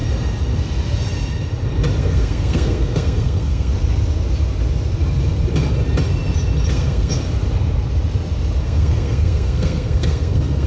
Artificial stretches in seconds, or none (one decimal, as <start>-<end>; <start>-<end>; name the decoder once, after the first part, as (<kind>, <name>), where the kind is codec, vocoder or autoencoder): 2.0-3.7 (codec, SNAC); 6.7-7.2; 8.6-10.7